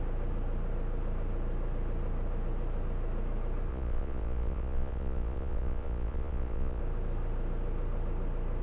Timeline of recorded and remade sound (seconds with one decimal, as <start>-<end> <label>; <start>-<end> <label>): 0.0-3.7 recorded; 3.7-6.8 remade; 6.8-8.6 recorded

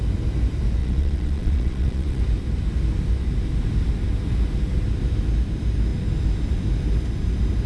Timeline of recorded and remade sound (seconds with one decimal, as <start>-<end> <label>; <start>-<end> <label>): 0.0-0.8 recorded; 0.8-2.2 remade; 2.2-7.7 recorded

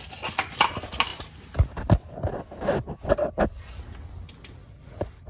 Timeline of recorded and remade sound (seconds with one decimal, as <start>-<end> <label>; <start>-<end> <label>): 0.0-1.1 recorded; 1.1-3.4 remade; 3.4-4.6 recorded; 4.6-5.3 remade

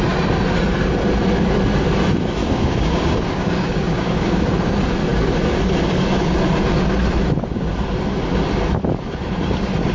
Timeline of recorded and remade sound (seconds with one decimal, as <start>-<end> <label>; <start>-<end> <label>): 0.0-2.4 recorded; 2.4-4.5 remade; 4.5-9.9 recorded

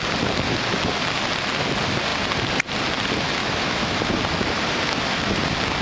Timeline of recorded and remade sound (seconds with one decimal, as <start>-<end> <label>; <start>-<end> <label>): 0.0-3.4 recorded; 3.4-4.0 remade; 4.0-5.8 recorded

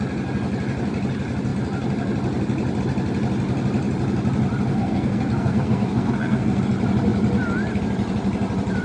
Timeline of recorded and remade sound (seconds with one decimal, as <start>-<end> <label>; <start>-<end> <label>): 0.0-4.7 recorded; 4.7-6.6 remade; 6.6-8.8 recorded

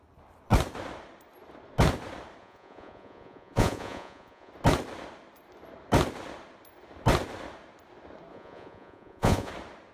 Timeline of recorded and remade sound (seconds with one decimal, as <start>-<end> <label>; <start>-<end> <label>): 0.0-2.4 recorded; 2.4-4.5 remade; 4.5-8.3 recorded; 8.3-9.5 remade; 9.5-9.9 recorded